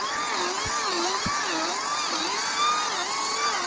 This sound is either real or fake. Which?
real